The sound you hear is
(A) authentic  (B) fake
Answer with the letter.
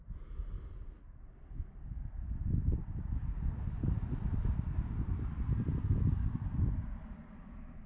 A